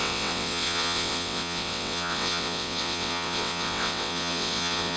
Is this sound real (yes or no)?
no